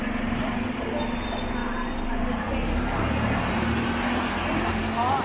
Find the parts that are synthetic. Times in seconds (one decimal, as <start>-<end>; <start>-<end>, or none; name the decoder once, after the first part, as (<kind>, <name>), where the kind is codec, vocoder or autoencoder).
none